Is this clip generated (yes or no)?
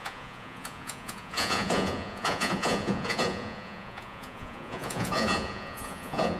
yes